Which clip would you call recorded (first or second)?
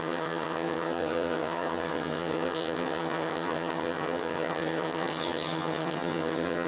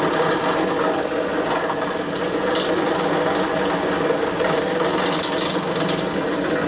second